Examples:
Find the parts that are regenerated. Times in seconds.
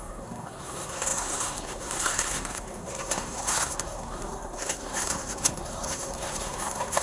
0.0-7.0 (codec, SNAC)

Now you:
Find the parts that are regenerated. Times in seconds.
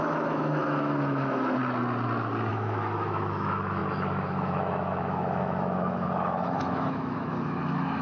0.0-1.6 (autoencoder, DAC-VAE); 2.5-8.0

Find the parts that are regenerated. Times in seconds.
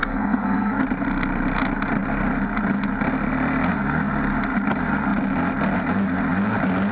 0.0-0.8 (codec, SNAC)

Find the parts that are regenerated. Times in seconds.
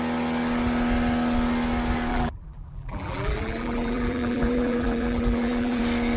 2.1-5.8 (vocoder, BigVGAN v2)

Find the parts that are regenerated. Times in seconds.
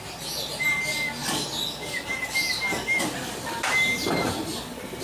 none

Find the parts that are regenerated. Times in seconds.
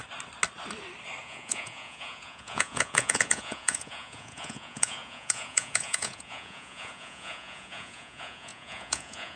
1.2-9.4 (vocoder, Vocos)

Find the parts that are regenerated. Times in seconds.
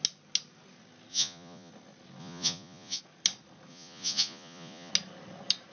1.1-1.7 (vocoder, Vocos); 2.2-3.0; 3.7-4.9